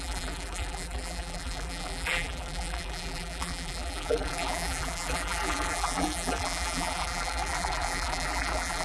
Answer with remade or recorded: remade